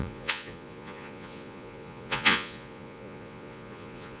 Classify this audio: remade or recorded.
remade